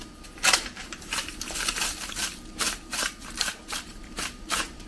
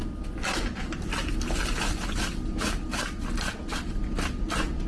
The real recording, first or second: second